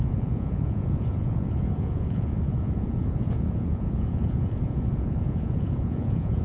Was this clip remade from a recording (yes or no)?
yes